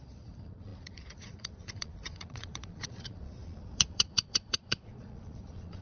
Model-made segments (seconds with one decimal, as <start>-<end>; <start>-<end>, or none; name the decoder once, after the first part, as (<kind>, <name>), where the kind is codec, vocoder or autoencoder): 0.0-5.8 (vocoder, Vocos)